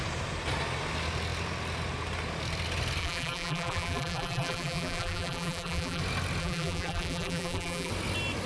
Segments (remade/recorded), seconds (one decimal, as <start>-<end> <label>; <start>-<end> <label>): 0.0-3.0 recorded; 3.0-6.0 remade; 6.0-6.4 recorded; 6.4-7.9 remade; 7.9-8.5 recorded